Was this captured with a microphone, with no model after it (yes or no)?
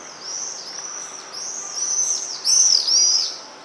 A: yes